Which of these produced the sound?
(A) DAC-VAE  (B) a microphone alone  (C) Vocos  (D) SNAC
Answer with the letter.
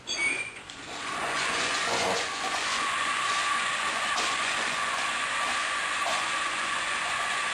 C